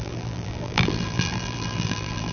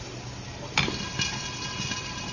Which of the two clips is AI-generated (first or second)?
first